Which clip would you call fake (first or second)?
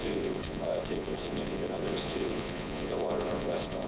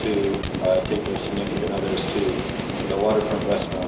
first